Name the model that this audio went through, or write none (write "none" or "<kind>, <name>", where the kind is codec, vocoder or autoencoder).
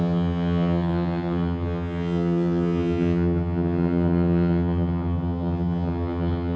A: vocoder, HiFi-GAN